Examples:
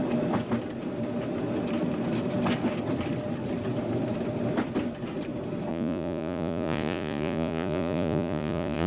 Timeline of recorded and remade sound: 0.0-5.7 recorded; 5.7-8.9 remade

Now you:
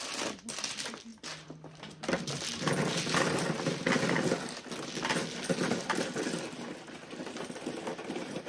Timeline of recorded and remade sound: 0.0-8.5 recorded